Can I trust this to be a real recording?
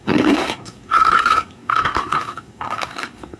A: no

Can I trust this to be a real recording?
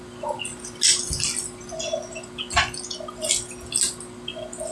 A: yes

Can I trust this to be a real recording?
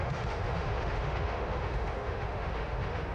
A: no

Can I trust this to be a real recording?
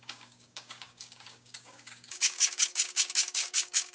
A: no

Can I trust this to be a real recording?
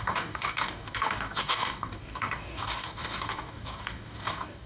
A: no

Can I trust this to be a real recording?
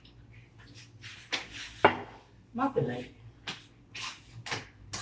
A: yes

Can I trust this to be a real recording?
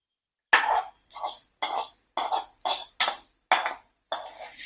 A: yes